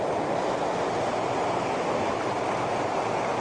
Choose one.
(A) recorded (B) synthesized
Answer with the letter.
A